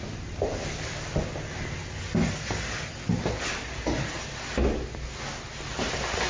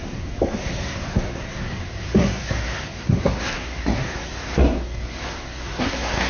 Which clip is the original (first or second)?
first